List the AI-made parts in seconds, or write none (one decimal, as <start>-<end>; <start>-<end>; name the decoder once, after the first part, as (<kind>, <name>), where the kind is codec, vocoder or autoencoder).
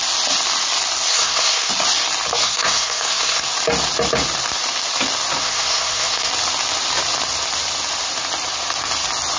1.1-1.7 (codec, SNAC); 2.4-3.4; 5.4-6.3